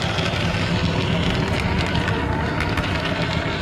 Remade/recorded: recorded